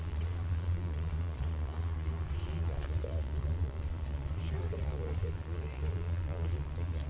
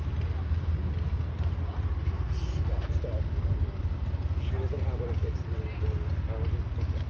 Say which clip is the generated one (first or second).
first